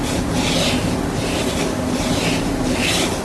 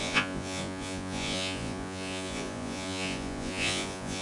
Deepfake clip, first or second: second